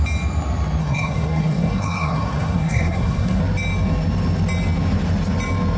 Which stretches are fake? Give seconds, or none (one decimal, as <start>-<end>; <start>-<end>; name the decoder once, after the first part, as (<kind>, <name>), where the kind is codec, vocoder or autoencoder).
0.8-3.4 (codec, SNAC)